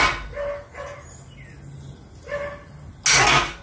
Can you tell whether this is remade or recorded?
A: recorded